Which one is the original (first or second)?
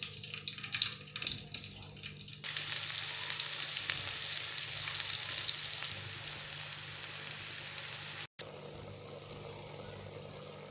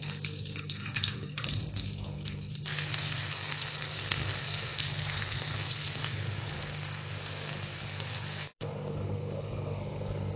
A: first